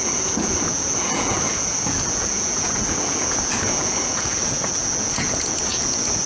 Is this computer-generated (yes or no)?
yes